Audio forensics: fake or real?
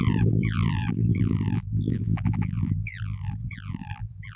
fake